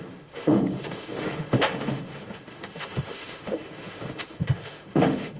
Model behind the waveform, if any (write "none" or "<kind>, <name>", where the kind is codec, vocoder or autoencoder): autoencoder, DAC-VAE